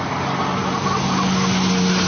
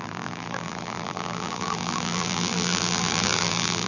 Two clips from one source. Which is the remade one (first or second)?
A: second